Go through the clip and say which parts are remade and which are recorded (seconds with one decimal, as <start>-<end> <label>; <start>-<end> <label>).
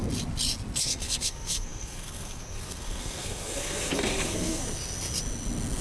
0.0-0.8 recorded; 0.8-4.6 remade; 4.6-5.8 recorded